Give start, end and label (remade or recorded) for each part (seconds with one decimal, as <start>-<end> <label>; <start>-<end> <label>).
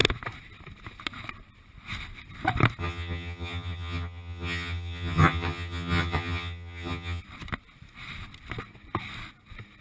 0.0-2.8 recorded; 2.8-7.2 remade; 7.2-9.8 recorded